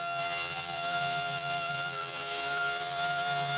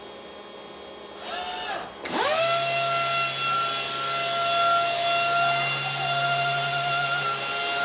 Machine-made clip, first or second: first